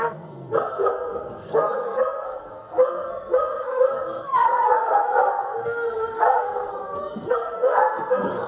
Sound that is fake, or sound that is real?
fake